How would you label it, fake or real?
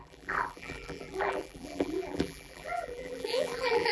fake